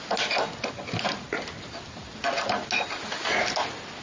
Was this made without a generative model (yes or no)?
yes